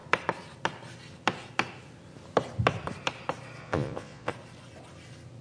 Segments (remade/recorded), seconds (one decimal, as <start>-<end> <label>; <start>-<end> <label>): 0.0-3.6 recorded; 3.6-4.3 remade; 4.3-5.4 recorded